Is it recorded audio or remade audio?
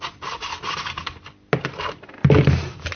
recorded